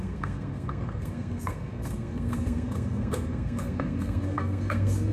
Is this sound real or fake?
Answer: fake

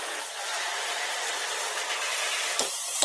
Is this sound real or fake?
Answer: fake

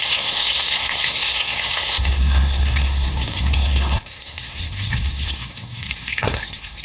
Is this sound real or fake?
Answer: fake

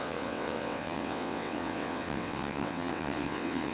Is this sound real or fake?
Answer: fake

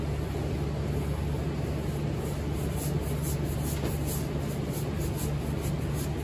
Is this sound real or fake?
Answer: real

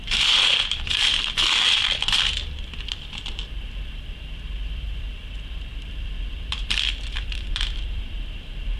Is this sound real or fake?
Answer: fake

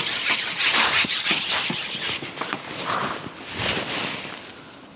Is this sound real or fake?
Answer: real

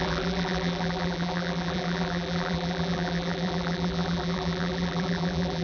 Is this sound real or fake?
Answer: fake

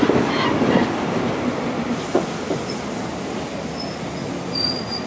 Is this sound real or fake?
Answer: real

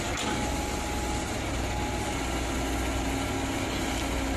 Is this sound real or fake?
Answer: real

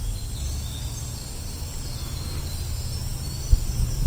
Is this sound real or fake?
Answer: real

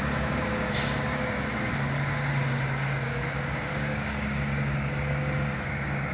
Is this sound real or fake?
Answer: fake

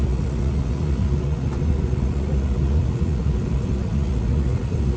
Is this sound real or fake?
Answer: fake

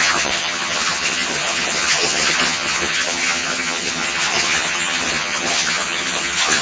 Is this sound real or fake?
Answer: fake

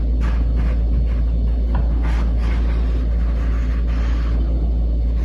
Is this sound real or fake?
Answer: real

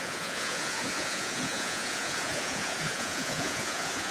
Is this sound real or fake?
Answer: fake